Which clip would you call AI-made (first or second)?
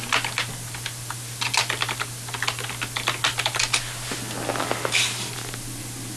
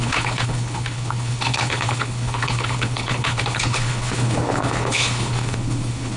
second